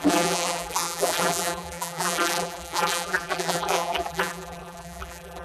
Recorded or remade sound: remade